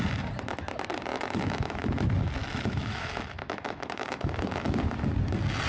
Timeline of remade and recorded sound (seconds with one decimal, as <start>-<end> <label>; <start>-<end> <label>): 0.0-1.1 recorded; 1.1-2.0 remade; 2.0-2.4 recorded; 2.4-4.8 remade; 4.8-5.7 recorded